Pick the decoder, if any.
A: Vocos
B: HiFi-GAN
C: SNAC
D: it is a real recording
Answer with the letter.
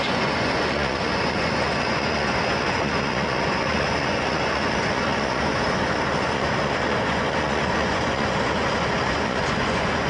A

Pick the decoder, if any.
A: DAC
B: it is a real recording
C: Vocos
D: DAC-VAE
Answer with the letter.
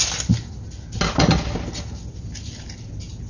B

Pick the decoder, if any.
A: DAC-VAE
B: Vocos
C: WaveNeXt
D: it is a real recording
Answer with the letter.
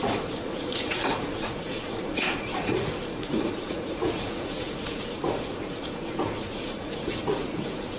B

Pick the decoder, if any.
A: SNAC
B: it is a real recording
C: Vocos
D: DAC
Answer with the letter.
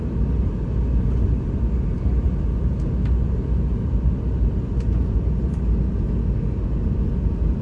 B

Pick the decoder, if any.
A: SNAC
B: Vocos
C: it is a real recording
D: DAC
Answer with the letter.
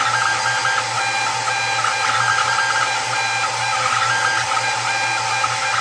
C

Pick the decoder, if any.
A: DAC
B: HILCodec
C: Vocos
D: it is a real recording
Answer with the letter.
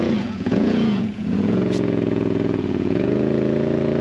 C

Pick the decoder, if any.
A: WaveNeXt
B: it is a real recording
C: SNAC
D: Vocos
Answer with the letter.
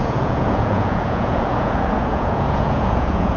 D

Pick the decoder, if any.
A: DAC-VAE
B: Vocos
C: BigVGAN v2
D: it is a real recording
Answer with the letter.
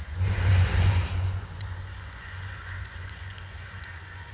B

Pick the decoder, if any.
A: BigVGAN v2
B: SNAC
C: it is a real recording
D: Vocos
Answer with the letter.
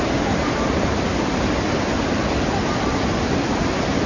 C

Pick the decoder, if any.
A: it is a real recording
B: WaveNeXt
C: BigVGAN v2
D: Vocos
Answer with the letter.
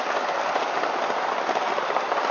A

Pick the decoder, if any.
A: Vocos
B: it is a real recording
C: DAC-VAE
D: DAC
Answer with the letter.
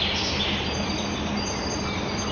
B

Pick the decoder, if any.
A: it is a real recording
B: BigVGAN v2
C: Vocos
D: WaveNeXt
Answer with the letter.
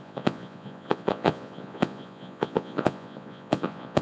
C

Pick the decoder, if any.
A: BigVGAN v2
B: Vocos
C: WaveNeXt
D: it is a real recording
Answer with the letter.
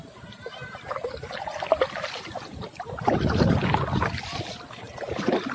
D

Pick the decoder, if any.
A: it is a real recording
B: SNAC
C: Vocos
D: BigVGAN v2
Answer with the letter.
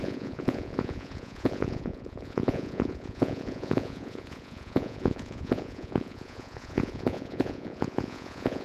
C